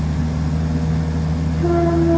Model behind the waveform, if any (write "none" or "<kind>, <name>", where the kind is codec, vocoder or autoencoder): none